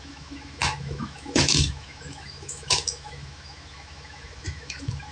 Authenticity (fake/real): fake